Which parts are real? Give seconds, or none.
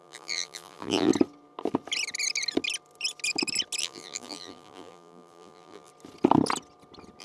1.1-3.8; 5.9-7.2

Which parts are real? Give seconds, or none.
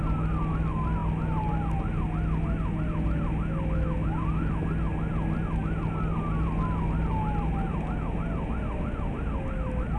0.0-10.0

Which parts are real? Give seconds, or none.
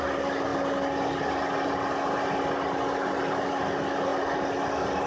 0.0-5.1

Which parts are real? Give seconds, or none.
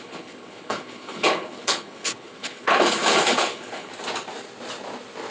3.9-5.3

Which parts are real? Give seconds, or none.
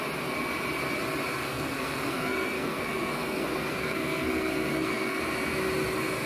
0.0-1.4; 5.2-6.3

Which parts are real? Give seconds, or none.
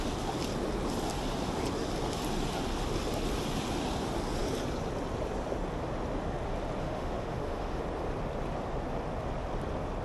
0.0-6.8; 7.8-10.0